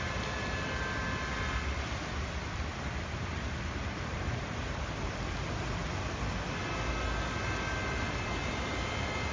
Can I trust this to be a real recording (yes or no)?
yes